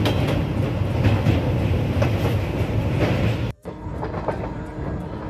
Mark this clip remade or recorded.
recorded